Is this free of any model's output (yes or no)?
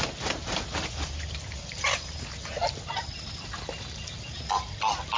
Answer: yes